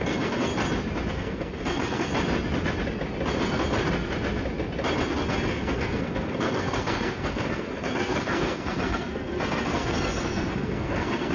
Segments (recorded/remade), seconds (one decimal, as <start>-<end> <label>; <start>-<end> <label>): 0.0-0.5 remade; 0.5-1.1 recorded; 1.1-2.1 remade; 2.1-5.1 recorded; 5.1-11.3 remade